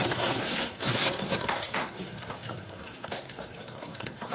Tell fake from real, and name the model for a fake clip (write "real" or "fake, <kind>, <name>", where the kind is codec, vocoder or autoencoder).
fake, codec, SNAC